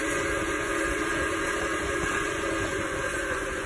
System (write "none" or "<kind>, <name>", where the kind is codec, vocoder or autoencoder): vocoder, Vocos